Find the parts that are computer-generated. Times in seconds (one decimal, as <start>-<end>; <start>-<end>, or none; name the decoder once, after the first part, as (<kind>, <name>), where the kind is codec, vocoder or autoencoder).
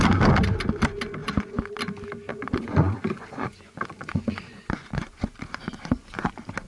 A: 1.2-1.8 (vocoder, Vocos); 2.3-6.3